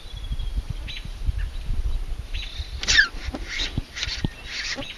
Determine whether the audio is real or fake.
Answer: real